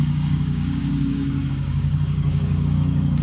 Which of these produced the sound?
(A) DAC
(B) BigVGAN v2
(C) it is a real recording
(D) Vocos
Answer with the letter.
A